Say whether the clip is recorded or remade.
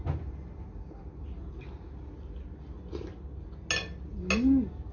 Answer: recorded